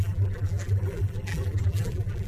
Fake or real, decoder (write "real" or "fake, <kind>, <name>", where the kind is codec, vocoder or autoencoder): fake, vocoder, BigVGAN v2